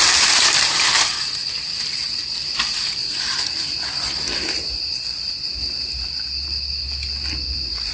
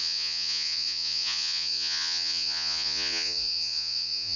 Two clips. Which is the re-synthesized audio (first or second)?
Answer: second